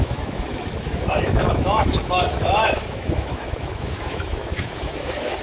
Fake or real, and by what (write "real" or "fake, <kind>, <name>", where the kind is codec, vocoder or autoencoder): fake, autoencoder, DAC-VAE